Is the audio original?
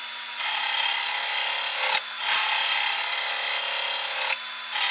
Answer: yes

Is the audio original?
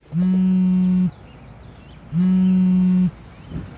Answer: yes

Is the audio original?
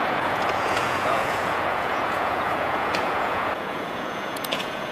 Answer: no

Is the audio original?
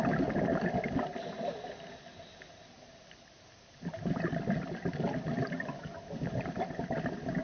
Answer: yes